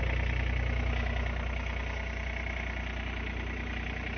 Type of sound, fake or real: real